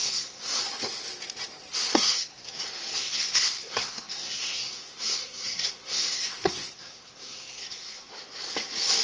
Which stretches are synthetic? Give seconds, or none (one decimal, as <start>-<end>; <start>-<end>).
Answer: 0.0-0.6; 1.7-2.6; 3.0-8.1